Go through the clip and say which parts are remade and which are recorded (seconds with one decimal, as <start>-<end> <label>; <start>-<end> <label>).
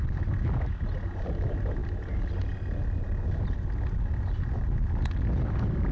0.0-5.9 recorded